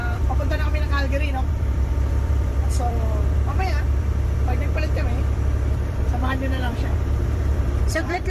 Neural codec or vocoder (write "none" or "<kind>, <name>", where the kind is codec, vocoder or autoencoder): vocoder, BigVGAN v2